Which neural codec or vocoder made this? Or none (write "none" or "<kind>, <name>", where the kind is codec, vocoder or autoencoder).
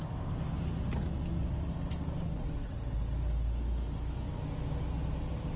none